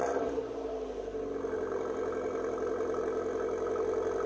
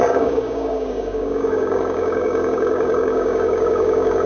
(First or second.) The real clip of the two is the first